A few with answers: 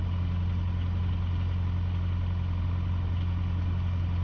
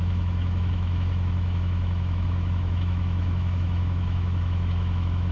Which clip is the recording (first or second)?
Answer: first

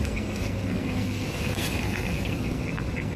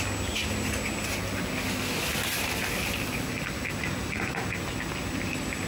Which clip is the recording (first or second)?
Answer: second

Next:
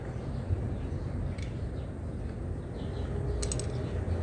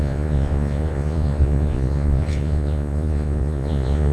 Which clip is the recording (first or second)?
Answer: first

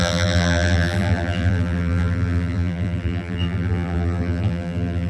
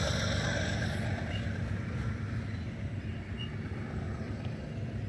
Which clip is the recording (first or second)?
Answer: second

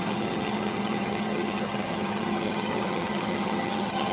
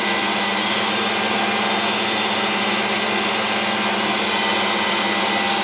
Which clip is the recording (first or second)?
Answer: second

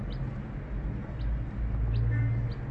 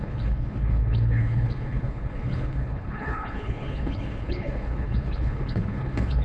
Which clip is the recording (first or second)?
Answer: first